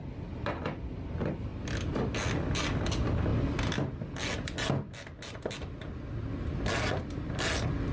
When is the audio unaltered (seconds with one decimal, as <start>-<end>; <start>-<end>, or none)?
0.0-7.9

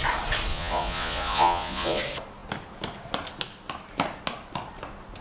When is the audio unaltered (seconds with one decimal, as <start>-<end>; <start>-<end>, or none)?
0.0-0.5; 2.0-5.2